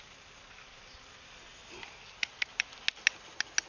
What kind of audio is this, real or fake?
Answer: real